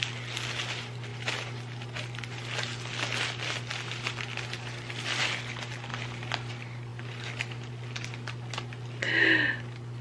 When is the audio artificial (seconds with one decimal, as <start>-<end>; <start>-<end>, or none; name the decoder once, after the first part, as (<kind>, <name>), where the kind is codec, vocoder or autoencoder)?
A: 1.1-5.2 (vocoder, BigVGAN v2); 5.9-6.5; 6.9-7.7